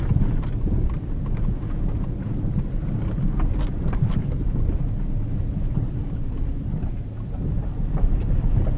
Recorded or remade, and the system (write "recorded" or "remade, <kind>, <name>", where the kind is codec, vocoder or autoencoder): recorded